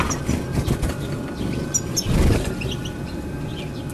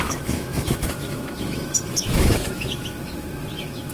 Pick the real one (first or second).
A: first